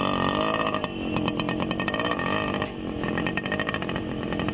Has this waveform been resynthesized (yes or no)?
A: no